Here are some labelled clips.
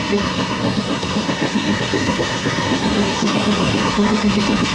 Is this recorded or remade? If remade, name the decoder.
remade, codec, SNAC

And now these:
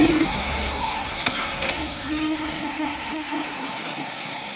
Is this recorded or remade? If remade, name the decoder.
remade, codec, SNAC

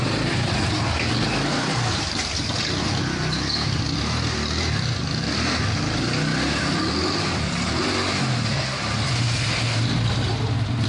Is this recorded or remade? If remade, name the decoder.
recorded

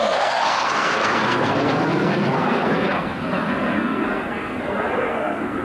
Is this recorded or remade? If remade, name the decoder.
remade, codec, SNAC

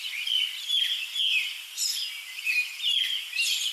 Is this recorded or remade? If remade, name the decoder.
recorded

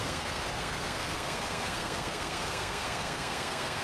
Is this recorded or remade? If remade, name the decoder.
remade, codec, SNAC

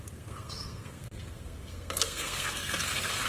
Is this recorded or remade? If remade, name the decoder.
remade, codec, SNAC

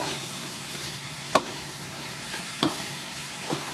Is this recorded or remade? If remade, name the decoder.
remade, codec, SNAC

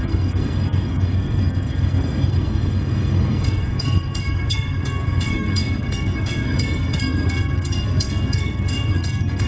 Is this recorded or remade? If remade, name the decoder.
remade, codec, SNAC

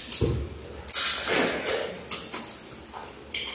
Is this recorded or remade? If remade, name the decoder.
recorded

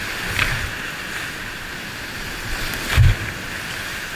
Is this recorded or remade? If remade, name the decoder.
recorded